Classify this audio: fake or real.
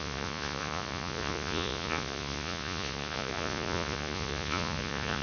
fake